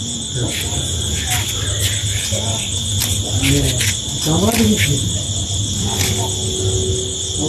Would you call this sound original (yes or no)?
yes